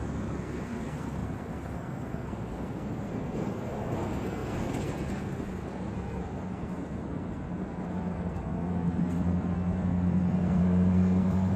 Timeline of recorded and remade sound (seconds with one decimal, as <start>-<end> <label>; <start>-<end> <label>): 0.0-11.6 remade